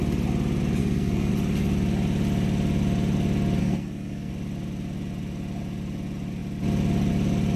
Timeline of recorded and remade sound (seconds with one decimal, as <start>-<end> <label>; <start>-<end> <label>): 0.0-0.8 recorded; 0.8-1.3 remade; 1.3-3.6 recorded; 3.6-4.3 remade; 4.3-7.6 recorded